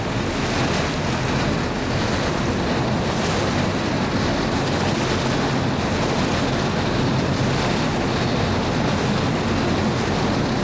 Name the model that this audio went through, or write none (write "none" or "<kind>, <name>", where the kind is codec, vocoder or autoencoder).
none